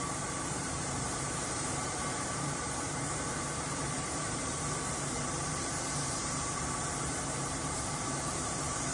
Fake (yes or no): yes